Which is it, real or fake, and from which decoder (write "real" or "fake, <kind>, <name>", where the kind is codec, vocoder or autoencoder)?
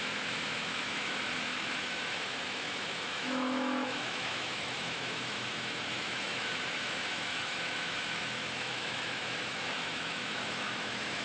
fake, autoencoder, DAC-VAE